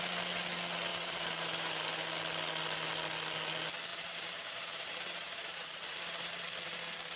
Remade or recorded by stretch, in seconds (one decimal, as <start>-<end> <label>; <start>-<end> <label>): 0.0-0.9 recorded; 0.9-1.8 remade; 1.8-3.9 recorded; 3.9-6.8 remade; 6.8-7.2 recorded